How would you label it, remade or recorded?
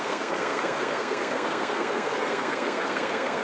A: remade